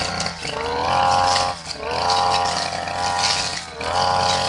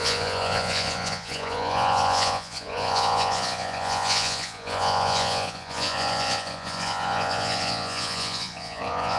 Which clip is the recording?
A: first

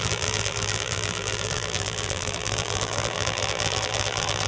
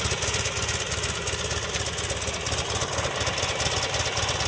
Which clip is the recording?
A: second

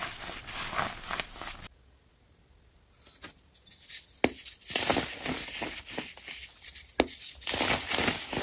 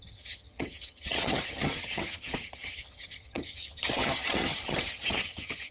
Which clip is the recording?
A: first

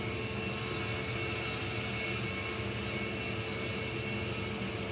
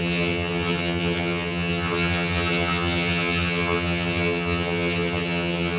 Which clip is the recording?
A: first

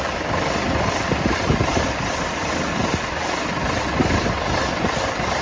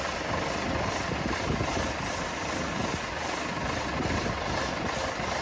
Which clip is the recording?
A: second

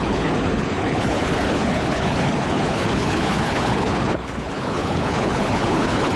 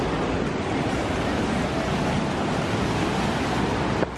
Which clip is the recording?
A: second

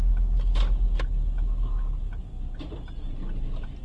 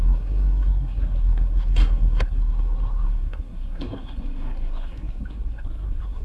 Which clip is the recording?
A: first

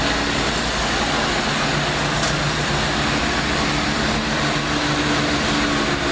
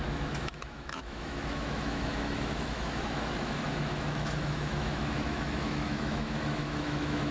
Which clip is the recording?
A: first